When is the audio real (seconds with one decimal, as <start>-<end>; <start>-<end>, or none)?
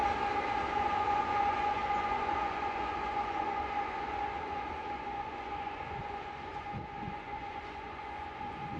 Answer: 0.0-0.7